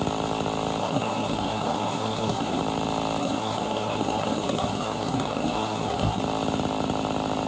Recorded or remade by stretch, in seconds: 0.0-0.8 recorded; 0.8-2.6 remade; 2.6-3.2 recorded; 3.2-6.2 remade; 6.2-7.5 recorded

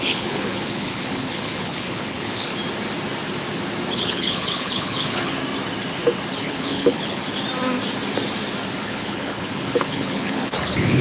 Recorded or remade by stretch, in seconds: 0.0-2.5 remade; 2.5-3.9 recorded; 3.9-5.4 remade; 5.4-6.4 recorded; 6.4-7.2 remade; 7.2-8.8 recorded; 8.8-11.0 remade